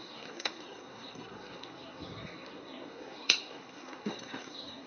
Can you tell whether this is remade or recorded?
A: remade